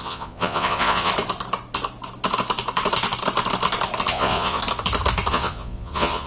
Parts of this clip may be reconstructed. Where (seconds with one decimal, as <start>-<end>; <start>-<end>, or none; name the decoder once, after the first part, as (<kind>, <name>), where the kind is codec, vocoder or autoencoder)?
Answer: 0.0-1.1 (vocoder, Vocos); 4.1-4.6; 5.3-6.3